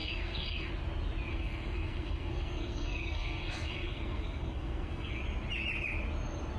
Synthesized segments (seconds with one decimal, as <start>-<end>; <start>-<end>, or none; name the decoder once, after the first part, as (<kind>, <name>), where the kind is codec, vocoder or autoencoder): 0.0-0.7 (codec, SNAC); 1.3-5.2